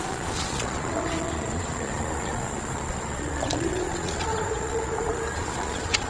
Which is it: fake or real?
fake